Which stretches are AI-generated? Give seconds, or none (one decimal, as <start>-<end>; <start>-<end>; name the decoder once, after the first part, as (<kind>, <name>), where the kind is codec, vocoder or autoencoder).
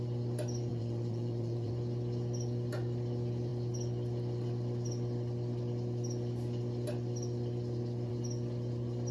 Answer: 0.7-1.7 (vocoder, Vocos)